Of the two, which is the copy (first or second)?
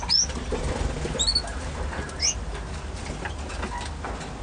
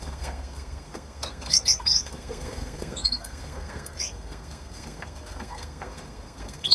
second